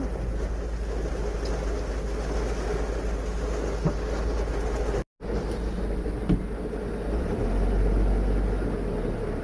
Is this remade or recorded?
recorded